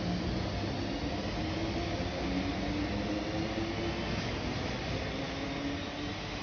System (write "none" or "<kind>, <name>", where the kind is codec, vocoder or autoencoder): none